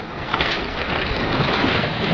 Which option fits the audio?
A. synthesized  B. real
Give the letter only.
A